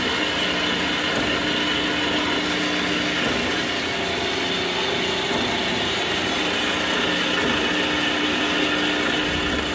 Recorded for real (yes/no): yes